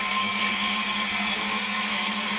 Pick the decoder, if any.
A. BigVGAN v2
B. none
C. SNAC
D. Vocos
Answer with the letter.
C